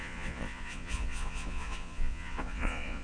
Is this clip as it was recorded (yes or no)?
no